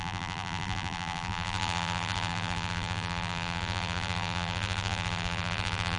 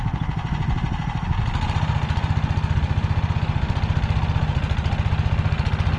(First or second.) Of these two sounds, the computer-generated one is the first